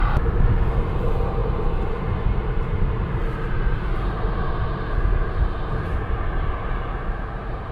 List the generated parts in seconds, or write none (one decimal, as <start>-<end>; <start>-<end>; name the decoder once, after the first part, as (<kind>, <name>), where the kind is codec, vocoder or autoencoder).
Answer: 0.0-3.9 (vocoder, BigVGAN v2); 4.6-7.7